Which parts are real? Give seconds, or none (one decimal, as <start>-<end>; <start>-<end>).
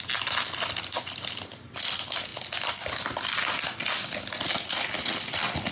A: 0.0-5.7